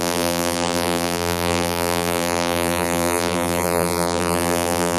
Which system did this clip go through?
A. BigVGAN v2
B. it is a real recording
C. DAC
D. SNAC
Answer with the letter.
A